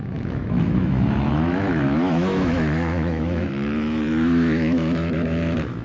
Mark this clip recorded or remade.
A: remade